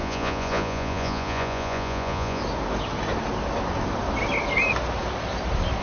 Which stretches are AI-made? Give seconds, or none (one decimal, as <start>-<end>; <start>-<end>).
0.0-2.4